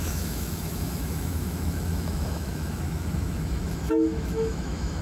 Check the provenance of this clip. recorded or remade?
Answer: remade